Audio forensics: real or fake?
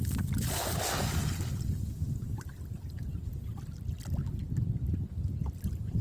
real